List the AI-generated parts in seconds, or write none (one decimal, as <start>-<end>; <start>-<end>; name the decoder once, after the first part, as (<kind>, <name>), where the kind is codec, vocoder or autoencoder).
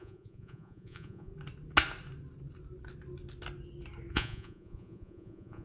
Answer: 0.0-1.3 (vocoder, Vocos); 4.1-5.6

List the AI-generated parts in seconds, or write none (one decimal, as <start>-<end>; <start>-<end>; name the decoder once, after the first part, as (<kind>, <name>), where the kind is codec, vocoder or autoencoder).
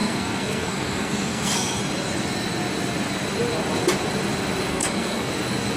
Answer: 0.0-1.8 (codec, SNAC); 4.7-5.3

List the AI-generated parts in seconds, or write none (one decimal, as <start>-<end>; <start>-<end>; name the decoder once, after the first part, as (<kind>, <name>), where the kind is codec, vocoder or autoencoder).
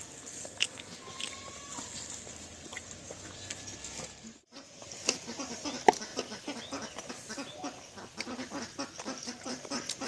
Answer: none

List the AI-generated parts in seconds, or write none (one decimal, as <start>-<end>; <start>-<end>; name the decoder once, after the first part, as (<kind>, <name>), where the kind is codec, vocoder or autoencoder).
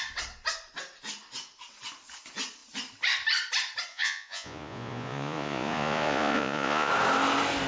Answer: 3.9-6.9 (vocoder, Vocos)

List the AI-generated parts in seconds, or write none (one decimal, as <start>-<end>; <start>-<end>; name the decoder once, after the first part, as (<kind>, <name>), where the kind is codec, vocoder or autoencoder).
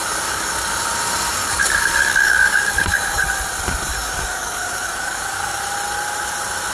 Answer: 0.0-0.5 (codec, DAC); 1.4-3.2; 3.9-5.6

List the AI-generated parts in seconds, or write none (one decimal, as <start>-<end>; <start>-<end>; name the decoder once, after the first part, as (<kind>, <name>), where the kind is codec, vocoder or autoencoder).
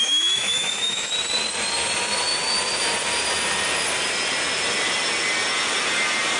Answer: 0.0-1.1 (autoencoder, DAC-VAE)